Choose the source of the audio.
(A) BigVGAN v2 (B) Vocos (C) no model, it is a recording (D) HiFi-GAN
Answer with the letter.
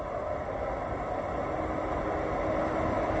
C